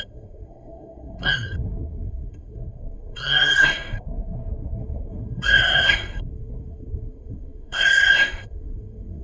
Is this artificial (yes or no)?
yes